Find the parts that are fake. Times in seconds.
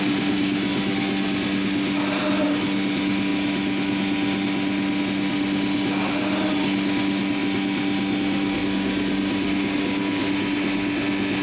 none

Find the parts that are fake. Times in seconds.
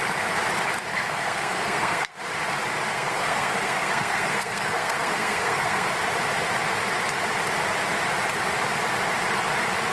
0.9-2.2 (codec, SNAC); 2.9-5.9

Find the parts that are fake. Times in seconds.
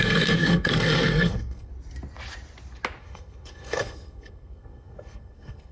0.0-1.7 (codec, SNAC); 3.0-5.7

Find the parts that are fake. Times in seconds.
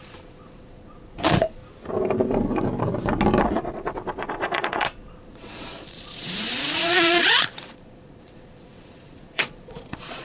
0.0-1.6 (vocoder, Vocos); 3.4-10.2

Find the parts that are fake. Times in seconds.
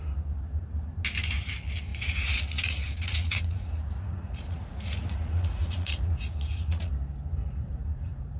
1.9-6.9 (vocoder, Vocos); 7.4-8.4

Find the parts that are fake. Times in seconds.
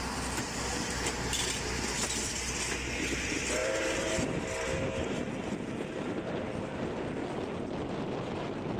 3.6-4.1 (vocoder, BigVGAN v2)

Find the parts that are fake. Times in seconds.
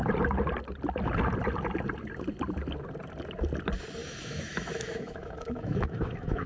4.0-6.5 (autoencoder, DAC-VAE)